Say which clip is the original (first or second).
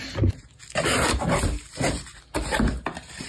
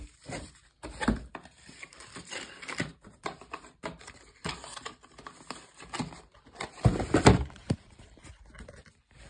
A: first